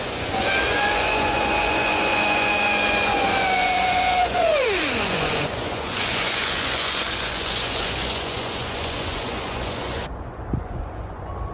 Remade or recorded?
remade